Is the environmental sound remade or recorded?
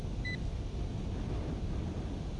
recorded